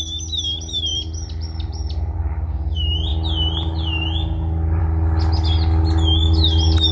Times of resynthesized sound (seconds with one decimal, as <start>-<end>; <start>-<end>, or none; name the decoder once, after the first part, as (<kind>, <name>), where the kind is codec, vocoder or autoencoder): 0.9-2.2 (vocoder, BigVGAN v2)